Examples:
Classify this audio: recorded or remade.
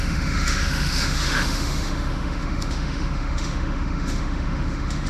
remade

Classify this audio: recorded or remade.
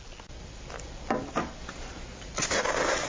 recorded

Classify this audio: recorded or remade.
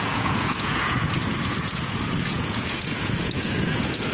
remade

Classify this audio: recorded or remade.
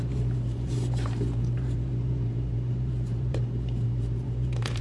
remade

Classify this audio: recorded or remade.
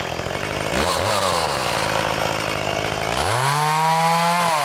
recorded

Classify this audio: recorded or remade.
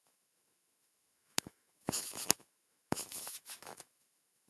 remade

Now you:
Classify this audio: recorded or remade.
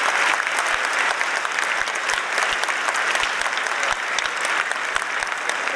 recorded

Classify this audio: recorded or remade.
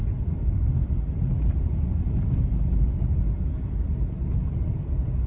recorded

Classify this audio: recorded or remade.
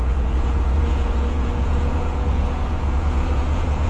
remade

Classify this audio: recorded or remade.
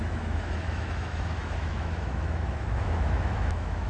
remade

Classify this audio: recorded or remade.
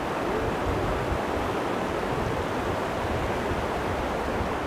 recorded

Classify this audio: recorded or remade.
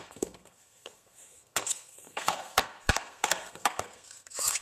remade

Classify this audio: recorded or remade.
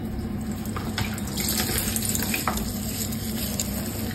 recorded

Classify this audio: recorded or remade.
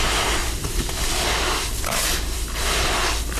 recorded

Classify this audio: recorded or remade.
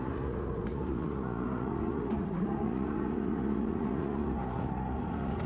remade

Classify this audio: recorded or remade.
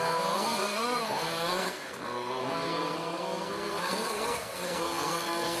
remade